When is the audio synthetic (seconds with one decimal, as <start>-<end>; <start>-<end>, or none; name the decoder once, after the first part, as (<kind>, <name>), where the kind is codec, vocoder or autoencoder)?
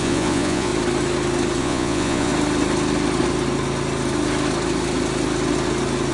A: 0.0-0.7 (vocoder, Vocos); 1.6-2.3